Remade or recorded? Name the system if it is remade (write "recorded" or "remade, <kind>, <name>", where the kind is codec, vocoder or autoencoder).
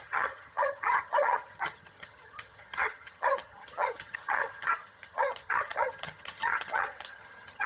remade, vocoder, HiFi-GAN